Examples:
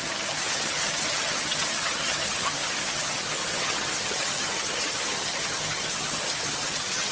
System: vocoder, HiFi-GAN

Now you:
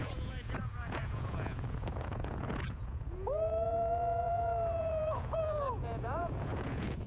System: vocoder, Vocos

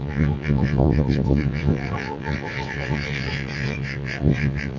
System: vocoder, WaveNeXt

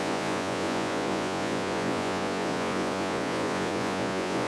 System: vocoder, Vocos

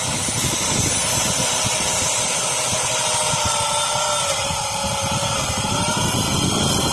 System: none